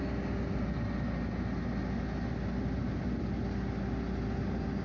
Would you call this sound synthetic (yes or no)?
no